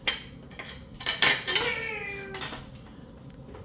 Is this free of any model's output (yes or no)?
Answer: yes